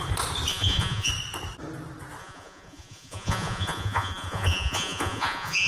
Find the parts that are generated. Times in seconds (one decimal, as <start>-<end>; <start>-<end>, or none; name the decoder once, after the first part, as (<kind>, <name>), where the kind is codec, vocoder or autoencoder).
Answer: 0.5-1.1 (vocoder, Vocos); 2.2-5.7